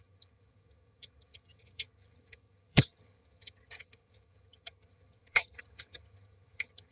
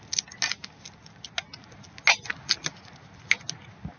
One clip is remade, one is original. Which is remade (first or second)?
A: first